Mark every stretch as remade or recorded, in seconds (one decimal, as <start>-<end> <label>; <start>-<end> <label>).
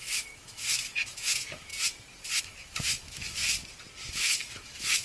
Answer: 0.0-1.7 remade; 1.7-2.4 recorded; 2.4-3.4 remade; 3.4-4.1 recorded; 4.1-5.0 remade